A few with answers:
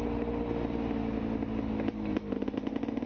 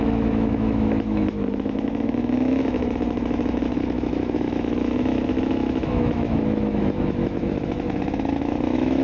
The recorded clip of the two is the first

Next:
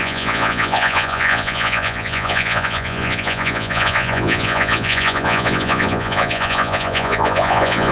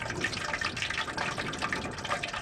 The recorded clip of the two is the second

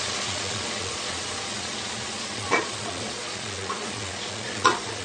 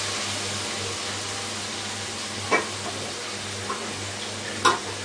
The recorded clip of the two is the second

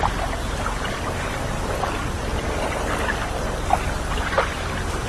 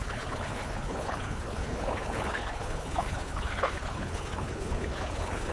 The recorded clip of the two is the first